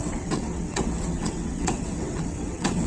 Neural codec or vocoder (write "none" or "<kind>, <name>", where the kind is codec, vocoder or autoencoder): vocoder, WaveNeXt